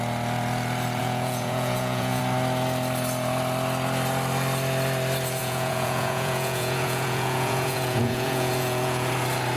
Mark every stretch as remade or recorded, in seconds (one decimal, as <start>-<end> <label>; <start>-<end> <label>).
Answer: 0.0-1.0 recorded; 1.0-2.2 remade; 2.2-5.4 recorded; 5.4-9.1 remade; 9.1-9.6 recorded

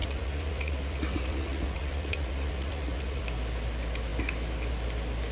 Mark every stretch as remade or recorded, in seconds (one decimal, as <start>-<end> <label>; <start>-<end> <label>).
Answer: 0.0-3.2 remade; 3.2-5.3 recorded

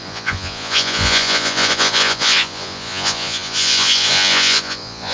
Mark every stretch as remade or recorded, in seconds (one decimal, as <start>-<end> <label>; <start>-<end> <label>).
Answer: 0.0-5.1 remade

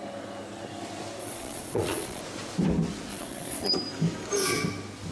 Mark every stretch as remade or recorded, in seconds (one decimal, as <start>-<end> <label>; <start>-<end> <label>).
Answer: 0.0-1.2 recorded; 1.2-2.2 remade; 2.2-3.1 recorded; 3.1-3.7 remade; 3.7-5.1 recorded

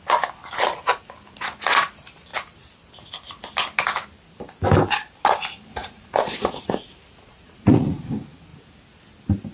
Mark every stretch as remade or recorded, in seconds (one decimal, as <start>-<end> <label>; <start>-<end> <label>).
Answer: 0.0-5.8 recorded; 5.8-8.1 remade; 8.1-9.5 recorded

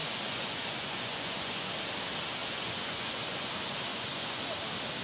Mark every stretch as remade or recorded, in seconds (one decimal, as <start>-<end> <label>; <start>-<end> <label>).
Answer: 0.0-1.7 remade; 1.7-2.4 recorded; 2.4-3.5 remade; 3.5-3.9 recorded; 3.9-4.4 remade; 4.4-5.0 recorded